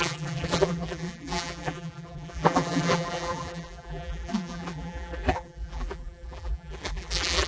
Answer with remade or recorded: remade